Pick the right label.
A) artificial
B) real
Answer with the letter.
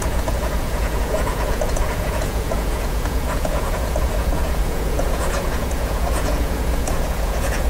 A